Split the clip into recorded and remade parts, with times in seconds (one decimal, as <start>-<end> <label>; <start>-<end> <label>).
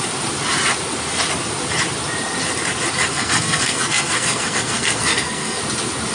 0.0-3.1 recorded; 3.1-5.6 remade; 5.6-6.1 recorded